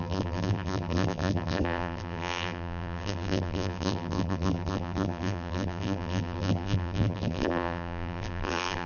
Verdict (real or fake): fake